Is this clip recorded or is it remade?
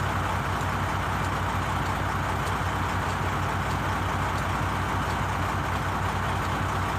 recorded